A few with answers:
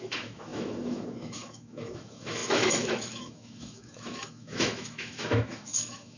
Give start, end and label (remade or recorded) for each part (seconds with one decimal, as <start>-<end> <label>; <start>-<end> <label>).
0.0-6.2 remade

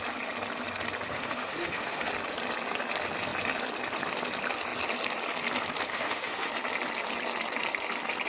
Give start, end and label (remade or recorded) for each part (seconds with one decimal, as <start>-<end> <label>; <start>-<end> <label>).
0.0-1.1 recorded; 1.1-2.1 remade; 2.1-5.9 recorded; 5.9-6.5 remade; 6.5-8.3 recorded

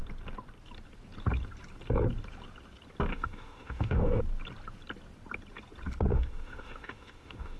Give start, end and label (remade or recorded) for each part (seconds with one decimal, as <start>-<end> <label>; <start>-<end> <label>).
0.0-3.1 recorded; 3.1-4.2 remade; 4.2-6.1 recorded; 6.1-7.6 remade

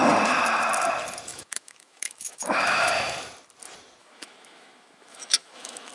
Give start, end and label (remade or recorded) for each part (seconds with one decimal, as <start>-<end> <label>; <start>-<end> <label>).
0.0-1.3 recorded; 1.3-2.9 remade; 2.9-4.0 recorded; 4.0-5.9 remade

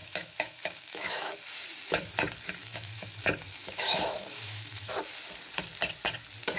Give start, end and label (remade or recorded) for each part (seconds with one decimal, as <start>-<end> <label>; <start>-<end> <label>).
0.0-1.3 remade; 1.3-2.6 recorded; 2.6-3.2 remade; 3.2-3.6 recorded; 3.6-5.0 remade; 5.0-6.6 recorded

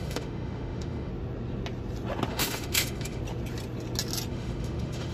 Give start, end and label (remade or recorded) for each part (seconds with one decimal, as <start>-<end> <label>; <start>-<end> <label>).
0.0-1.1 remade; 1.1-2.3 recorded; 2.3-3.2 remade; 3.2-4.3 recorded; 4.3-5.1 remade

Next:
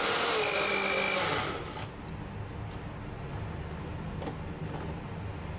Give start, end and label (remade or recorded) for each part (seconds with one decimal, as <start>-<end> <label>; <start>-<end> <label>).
0.0-5.6 recorded